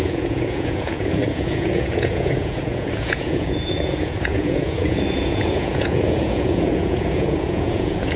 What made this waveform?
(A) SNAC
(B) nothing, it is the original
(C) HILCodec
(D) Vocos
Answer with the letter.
D